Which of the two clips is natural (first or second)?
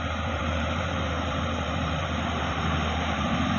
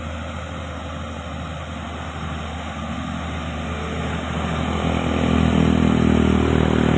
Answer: second